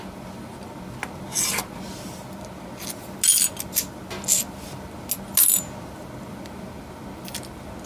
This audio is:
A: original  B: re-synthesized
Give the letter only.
A